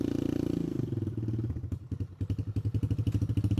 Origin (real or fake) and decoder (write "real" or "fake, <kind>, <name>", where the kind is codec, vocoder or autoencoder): real